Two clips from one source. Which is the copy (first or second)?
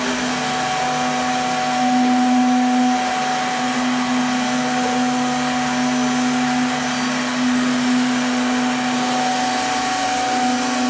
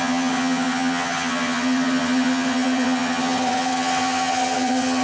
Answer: second